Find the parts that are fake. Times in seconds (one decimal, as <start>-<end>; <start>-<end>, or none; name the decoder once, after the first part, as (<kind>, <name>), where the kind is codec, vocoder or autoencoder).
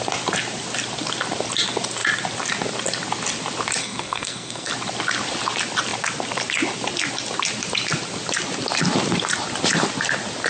3.8-4.7 (codec, SNAC)